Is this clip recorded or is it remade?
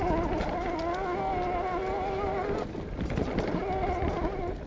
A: recorded